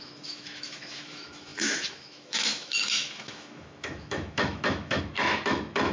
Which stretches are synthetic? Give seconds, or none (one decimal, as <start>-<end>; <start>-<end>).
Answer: 0.0-5.9